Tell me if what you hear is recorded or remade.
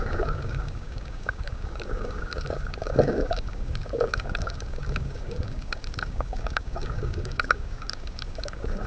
remade